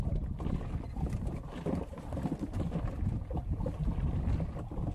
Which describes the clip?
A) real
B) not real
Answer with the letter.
A